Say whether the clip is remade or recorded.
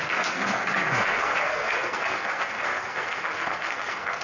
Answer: remade